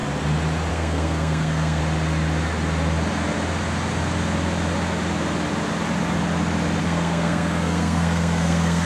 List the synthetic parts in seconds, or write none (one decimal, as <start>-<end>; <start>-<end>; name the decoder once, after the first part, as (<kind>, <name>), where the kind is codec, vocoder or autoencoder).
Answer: 0.7-1.8 (codec, SNAC); 6.8-8.9